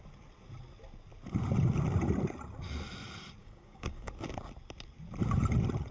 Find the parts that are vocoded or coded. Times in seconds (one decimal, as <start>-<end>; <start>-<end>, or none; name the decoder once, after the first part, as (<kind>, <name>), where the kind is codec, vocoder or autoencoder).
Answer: 3.4-4.1 (codec, DAC)